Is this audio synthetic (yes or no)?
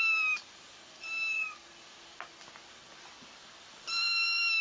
yes